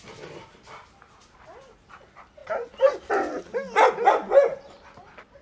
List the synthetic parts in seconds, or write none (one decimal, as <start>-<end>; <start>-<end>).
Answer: none